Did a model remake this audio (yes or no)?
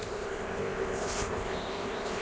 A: yes